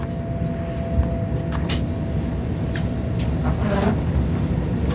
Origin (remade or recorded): recorded